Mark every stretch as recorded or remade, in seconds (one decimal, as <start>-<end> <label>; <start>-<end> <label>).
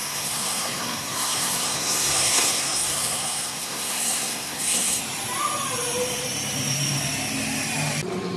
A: 0.0-5.0 remade; 5.0-8.4 recorded